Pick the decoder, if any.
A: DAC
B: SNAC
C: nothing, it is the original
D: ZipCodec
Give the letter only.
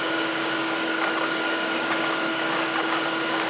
A